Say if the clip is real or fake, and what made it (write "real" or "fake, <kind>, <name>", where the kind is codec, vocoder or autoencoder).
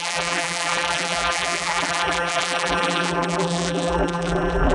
fake, vocoder, BigVGAN v2